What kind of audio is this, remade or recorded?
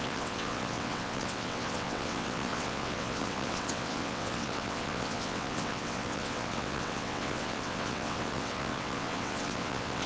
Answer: remade